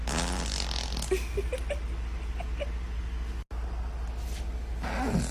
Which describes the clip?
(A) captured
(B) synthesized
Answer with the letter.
A